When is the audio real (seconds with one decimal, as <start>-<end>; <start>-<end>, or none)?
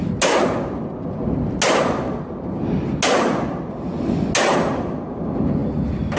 0.0-6.2